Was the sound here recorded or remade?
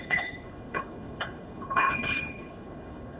remade